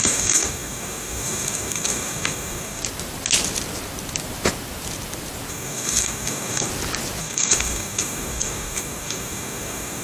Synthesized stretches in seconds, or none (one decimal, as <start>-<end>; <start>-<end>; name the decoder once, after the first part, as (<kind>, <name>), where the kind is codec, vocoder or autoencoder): 0.0-2.8 (codec, DAC); 5.5-6.7; 7.2-10.0